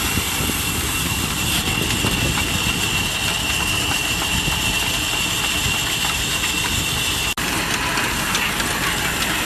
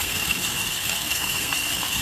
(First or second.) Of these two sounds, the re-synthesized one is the second